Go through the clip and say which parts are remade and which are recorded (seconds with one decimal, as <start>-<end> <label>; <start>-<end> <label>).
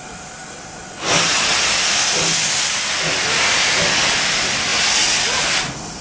0.0-6.0 recorded